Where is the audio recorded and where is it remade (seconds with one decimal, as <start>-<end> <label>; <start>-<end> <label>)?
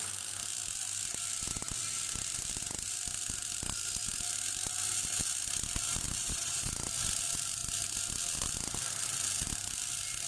0.0-6.2 recorded; 6.2-6.7 remade; 6.7-10.3 recorded